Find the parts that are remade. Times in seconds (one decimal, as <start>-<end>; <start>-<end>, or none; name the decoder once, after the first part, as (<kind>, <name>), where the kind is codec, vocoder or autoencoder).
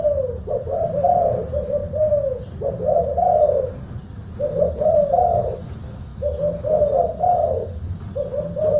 none